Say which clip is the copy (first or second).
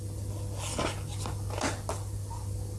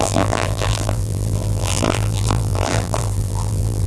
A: second